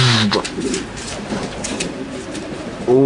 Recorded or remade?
remade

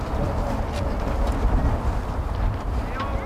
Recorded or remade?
recorded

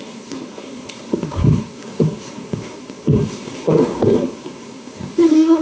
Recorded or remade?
remade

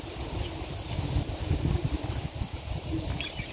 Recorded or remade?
recorded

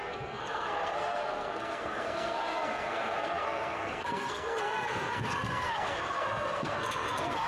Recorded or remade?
remade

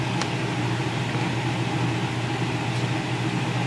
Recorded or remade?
recorded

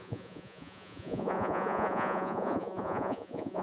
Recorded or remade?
remade